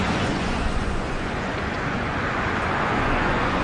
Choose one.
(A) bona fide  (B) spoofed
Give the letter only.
B